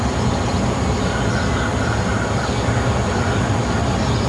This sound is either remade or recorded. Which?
recorded